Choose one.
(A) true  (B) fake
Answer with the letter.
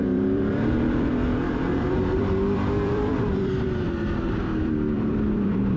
B